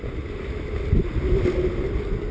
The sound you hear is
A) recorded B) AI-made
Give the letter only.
A